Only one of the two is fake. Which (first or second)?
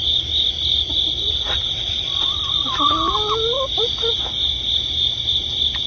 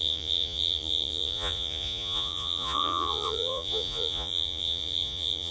second